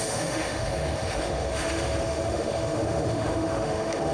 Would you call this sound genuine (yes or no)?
no